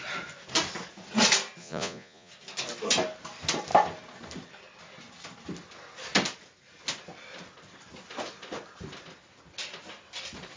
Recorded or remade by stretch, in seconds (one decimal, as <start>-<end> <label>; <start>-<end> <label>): 0.0-1.6 recorded; 1.6-2.3 remade; 2.3-10.6 recorded